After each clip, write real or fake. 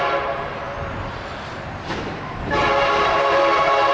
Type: fake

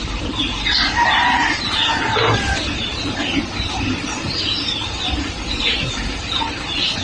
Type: fake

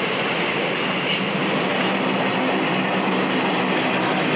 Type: real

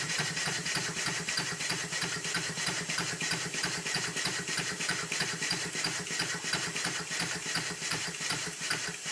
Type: fake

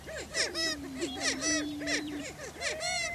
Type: fake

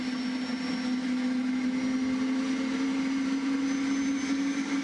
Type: real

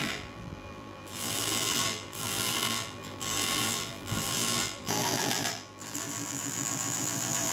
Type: fake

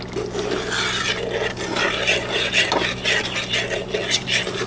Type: real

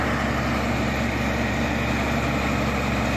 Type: real